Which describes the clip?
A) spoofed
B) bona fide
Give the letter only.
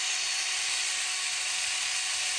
B